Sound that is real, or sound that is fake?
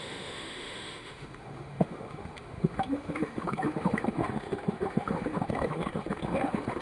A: fake